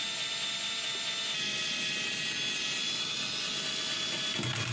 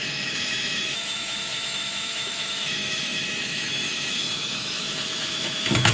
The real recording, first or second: first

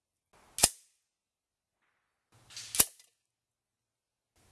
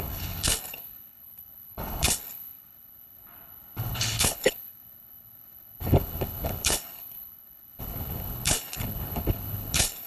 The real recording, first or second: first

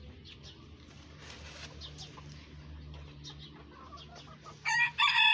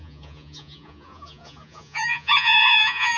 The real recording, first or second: first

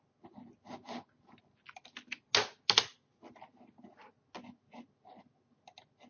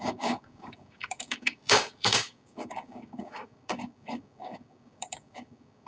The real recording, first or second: first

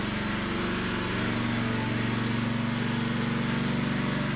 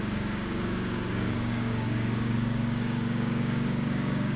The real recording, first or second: first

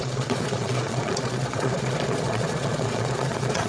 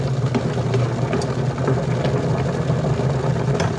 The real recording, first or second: second